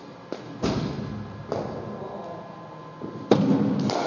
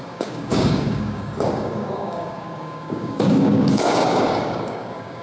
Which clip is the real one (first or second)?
first